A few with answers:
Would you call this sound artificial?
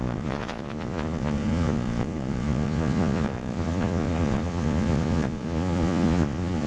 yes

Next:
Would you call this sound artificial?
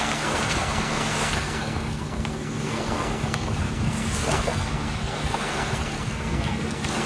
yes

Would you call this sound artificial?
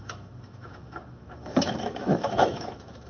yes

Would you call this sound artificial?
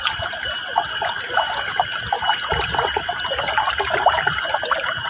no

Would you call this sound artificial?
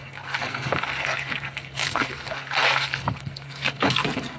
yes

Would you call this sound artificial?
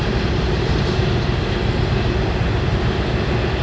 no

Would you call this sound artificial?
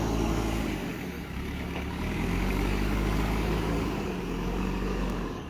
yes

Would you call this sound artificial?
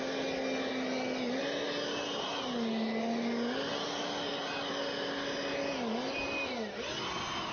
no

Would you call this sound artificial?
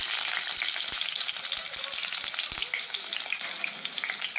no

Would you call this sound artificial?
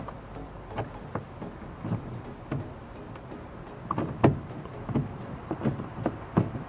no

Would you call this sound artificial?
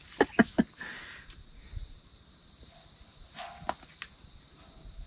no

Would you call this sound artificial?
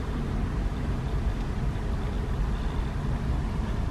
no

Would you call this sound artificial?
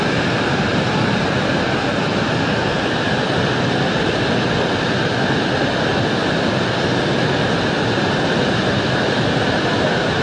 no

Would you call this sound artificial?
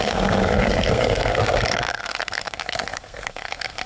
yes